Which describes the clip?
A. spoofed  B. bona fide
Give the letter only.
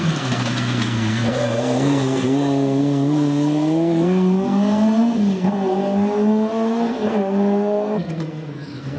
A